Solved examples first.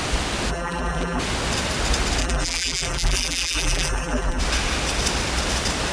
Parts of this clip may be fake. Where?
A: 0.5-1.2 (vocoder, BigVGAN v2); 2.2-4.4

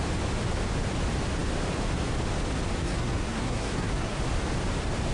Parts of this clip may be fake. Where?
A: 2.8-4.2 (codec, SNAC)

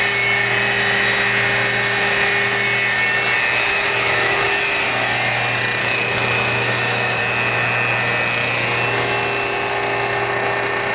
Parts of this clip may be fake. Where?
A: 3.7-4.6 (autoencoder, DAC-VAE); 5.8-7.2

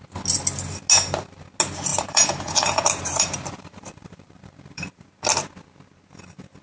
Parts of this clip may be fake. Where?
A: 1.9-5.1 (vocoder, BigVGAN v2)

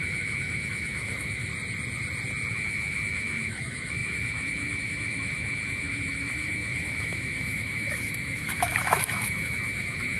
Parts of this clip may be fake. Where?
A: 0.0-1.5 (autoencoder, DAC-VAE); 2.5-10.2

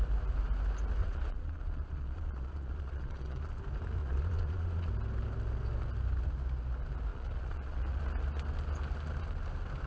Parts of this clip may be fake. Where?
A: 1.0-3.6 (vocoder, Vocos); 4.0-4.9; 7.1-8.0

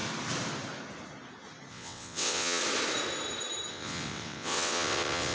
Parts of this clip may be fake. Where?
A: 1.7-2.6 (vocoder, WaveNeXt); 3.7-5.3